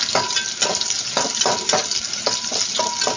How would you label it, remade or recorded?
recorded